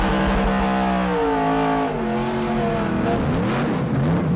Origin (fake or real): real